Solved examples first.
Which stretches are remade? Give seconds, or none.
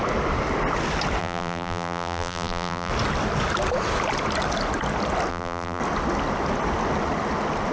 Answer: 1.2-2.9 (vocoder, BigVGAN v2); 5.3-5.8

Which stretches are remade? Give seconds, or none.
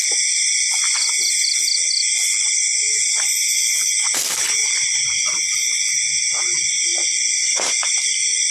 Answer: 4.6-5.2 (vocoder, BigVGAN v2)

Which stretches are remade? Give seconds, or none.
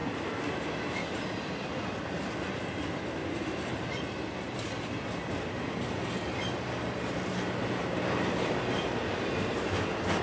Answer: 0.0-0.7 (vocoder, BigVGAN v2); 3.2-3.9; 7.8-10.2